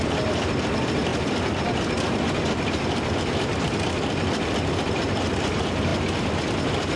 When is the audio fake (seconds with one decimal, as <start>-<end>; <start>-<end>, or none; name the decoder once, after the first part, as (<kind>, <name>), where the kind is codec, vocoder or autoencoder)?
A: 1.1-5.3 (vocoder, BigVGAN v2); 5.9-6.6